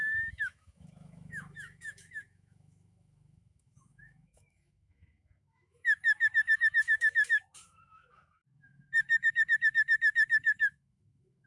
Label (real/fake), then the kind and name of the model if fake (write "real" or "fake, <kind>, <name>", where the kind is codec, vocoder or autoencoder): fake, autoencoder, DAC-VAE